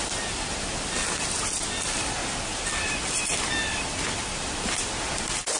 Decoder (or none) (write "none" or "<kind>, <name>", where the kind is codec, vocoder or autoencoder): none